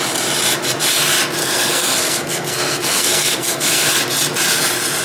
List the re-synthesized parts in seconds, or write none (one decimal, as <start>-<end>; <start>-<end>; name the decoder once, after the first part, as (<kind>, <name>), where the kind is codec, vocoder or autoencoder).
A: 1.4-4.0 (codec, SNAC)